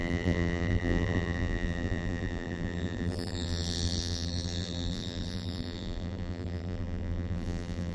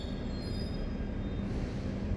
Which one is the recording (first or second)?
second